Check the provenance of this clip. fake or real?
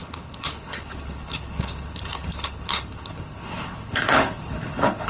fake